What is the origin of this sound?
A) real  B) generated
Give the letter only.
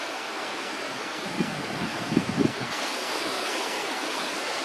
B